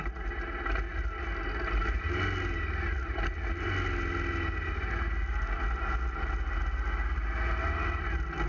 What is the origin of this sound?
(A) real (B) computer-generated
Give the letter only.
A